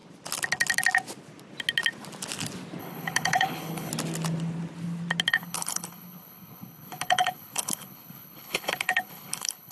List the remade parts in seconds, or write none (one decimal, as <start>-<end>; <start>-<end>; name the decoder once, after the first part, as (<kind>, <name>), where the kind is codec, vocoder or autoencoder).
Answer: 2.8-3.9 (codec, HILCodec); 5.3-9.7